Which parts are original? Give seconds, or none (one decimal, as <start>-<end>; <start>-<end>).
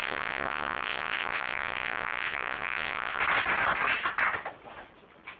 3.2-5.4